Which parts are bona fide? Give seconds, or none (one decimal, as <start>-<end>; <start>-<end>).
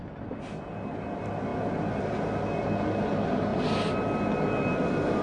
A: 0.0-5.2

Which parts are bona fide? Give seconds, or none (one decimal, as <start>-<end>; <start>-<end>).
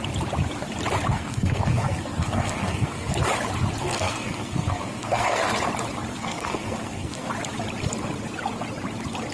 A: 0.0-1.1; 3.1-3.8; 5.4-6.1; 7.3-9.3